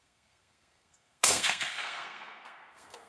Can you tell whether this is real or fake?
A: fake